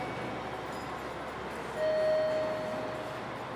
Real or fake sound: real